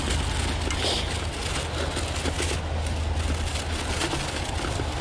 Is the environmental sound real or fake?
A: real